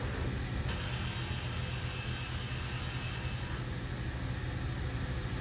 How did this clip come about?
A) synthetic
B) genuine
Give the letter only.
B